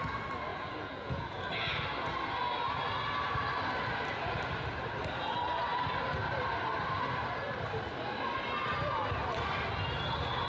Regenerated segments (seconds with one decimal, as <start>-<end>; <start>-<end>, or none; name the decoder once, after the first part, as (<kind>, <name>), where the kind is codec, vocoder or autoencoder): 0.5-1.4 (vocoder, Vocos)